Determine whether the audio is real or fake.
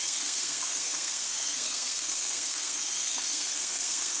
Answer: fake